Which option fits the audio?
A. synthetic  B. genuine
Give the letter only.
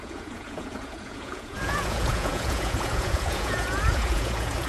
A